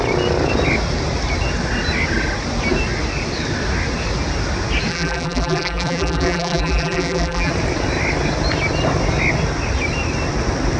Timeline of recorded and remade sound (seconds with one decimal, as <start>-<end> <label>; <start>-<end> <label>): 0.0-4.9 recorded; 4.9-7.5 remade; 7.5-10.8 recorded